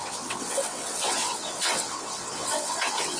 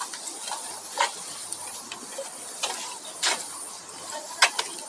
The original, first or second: second